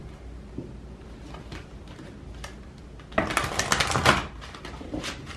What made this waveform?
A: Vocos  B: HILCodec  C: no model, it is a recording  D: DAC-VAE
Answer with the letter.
C